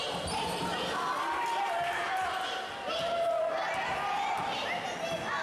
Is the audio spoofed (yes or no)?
no